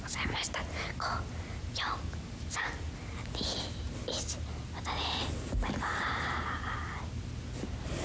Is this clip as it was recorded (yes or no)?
yes